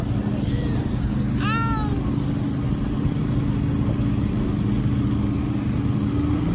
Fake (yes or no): no